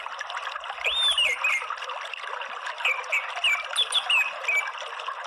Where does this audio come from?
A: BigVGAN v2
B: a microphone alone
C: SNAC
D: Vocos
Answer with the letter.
B